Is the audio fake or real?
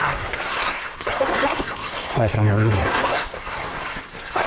fake